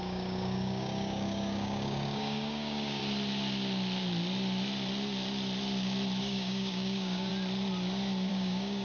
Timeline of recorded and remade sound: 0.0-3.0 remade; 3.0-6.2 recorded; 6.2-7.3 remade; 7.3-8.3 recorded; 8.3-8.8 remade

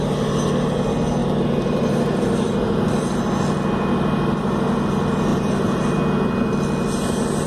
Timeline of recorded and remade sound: 0.0-1.2 recorded; 1.2-3.2 remade; 3.2-5.3 recorded; 5.3-6.0 remade; 6.0-7.5 recorded

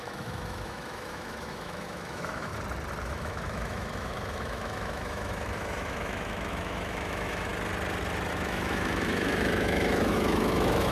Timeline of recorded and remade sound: 0.0-2.5 remade; 2.5-3.0 recorded; 3.0-7.5 remade; 7.5-8.3 recorded; 8.3-10.9 remade

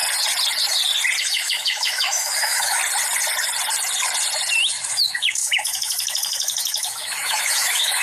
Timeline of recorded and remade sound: 0.0-1.2 recorded; 1.2-2.8 remade; 2.8-4.6 recorded; 4.6-8.0 remade